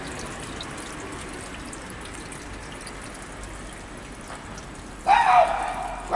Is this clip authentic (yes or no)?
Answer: yes